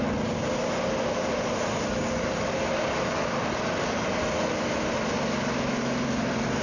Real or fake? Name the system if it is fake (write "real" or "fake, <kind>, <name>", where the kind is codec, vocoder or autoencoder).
real